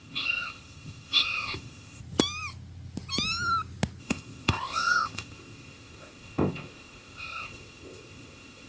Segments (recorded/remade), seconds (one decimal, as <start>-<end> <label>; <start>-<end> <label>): 0.0-2.0 remade; 2.0-4.0 recorded; 4.0-8.7 remade